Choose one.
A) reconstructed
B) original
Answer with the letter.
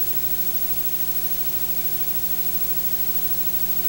B